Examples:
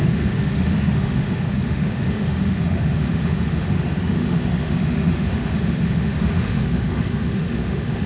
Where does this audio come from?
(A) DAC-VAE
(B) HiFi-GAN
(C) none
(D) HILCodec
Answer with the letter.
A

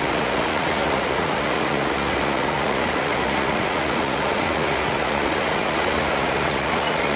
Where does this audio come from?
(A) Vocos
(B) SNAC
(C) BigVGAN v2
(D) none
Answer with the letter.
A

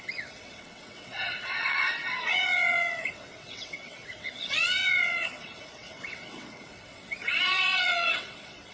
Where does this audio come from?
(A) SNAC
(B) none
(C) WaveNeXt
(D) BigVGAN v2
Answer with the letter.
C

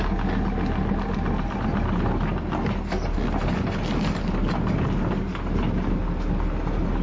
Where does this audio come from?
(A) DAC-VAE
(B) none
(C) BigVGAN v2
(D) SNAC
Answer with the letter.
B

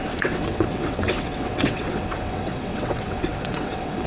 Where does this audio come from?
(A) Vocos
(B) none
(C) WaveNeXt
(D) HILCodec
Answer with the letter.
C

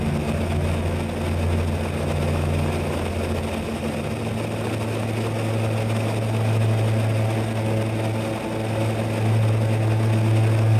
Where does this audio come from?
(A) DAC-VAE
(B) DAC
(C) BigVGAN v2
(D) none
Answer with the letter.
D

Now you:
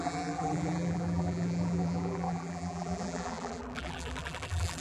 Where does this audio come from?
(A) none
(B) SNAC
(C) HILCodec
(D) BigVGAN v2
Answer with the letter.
D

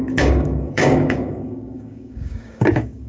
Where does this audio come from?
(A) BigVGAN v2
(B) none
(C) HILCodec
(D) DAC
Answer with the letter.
D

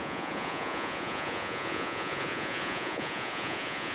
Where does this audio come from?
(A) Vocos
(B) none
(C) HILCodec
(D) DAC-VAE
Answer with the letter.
A